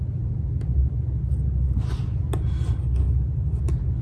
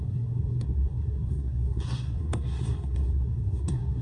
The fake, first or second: second